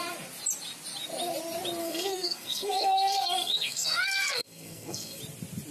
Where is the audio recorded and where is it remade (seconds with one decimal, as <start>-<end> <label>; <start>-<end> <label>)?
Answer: 0.0-1.8 recorded; 1.8-5.2 remade; 5.2-5.7 recorded